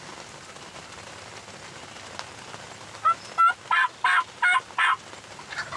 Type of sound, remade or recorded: recorded